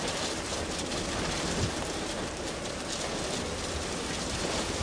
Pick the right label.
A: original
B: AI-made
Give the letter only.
A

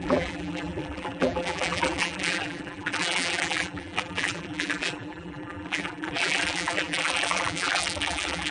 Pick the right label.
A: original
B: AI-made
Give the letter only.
B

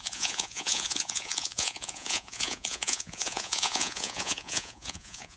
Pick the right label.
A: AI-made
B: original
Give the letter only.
A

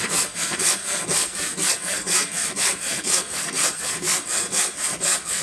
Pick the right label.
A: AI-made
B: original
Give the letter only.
A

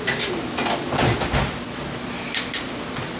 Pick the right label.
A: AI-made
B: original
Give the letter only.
B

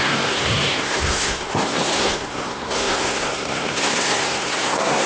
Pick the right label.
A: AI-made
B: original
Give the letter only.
A